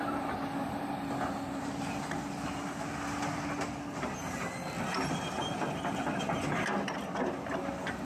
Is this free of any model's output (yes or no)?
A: yes